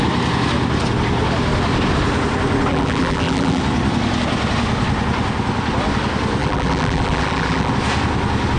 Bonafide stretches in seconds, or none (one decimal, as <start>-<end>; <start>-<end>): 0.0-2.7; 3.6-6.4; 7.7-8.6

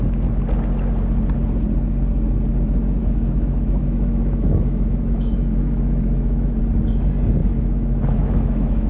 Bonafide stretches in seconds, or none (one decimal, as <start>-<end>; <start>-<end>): 0.0-3.0; 6.6-7.4

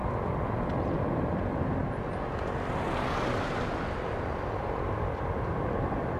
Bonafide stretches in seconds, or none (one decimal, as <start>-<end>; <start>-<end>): 0.0-0.8; 1.8-5.0

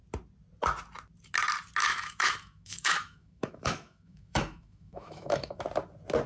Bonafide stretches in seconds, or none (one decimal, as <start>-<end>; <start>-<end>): 0.0-1.8; 5.6-6.3